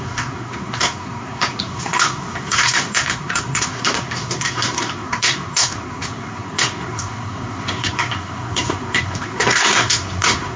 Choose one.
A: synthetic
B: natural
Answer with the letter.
A